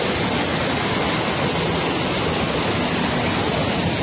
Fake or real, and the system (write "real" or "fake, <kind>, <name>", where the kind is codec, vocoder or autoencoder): real